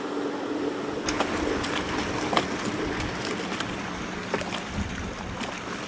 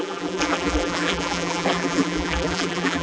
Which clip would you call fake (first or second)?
second